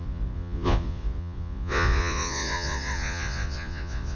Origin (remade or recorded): remade